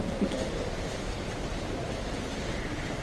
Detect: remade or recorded recorded